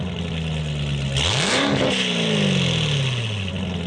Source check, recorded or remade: recorded